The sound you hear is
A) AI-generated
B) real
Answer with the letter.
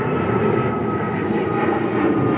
B